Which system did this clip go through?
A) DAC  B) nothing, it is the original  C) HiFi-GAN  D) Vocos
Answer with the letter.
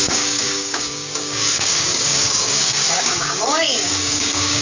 A